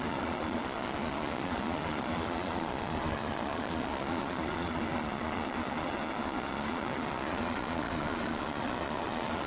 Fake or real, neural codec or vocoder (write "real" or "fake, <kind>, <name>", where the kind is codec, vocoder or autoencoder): fake, vocoder, Vocos